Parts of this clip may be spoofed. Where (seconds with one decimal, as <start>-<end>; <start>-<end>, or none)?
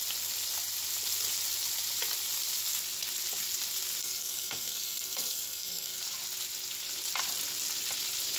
4.0-6.0